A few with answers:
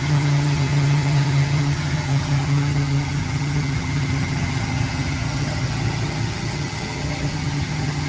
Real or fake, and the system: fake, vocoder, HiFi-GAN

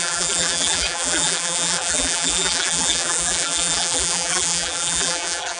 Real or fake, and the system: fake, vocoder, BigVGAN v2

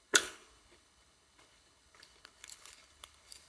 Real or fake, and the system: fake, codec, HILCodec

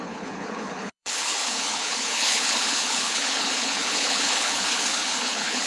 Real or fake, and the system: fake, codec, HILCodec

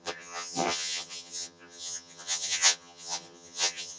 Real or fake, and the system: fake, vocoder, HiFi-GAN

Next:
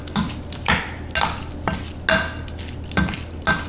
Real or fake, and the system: real